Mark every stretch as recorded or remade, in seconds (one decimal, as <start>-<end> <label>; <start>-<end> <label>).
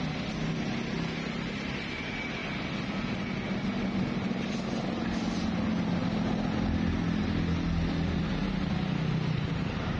0.0-10.0 recorded